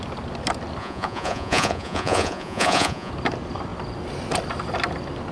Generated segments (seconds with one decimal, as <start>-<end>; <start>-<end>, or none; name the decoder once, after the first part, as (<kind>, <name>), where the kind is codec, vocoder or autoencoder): 0.8-3.1 (vocoder, Vocos)